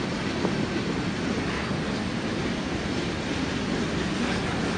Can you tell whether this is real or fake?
real